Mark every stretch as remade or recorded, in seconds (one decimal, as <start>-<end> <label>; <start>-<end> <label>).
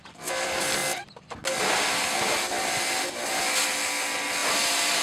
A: 0.0-4.4 recorded; 4.4-5.0 remade